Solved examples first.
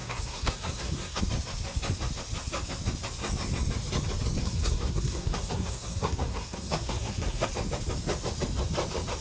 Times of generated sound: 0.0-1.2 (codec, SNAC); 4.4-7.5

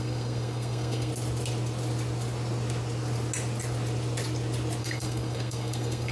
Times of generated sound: 0.0-1.1 (codec, SNAC); 4.8-6.1

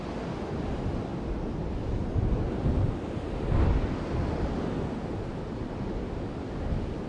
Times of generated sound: none

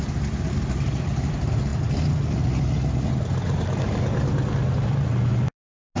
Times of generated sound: none

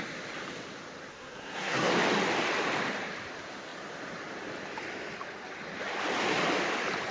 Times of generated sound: 1.1-1.9 (codec, SNAC)

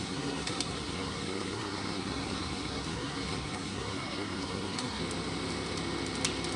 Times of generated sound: 0.0-5.0 (codec, SNAC)

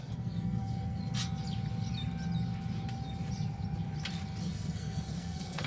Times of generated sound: 0.0-1.0 (codec, SNAC); 4.4-5.7

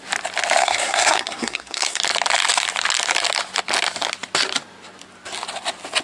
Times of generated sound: 0.6-2.0 (codec, SNAC)